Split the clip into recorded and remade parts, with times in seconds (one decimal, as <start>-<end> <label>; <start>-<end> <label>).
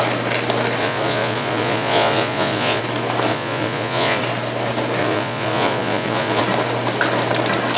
0.0-0.8 recorded; 0.8-2.8 remade; 2.8-3.3 recorded; 3.3-4.2 remade; 4.2-5.0 recorded; 5.0-6.4 remade; 6.4-7.8 recorded